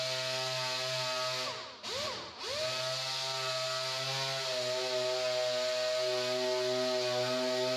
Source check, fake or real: real